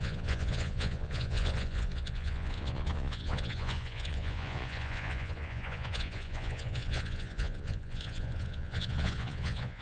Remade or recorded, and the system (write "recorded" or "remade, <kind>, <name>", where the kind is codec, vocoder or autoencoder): remade, vocoder, Vocos